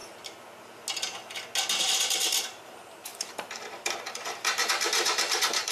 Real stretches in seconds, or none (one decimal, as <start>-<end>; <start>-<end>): 0.0-1.8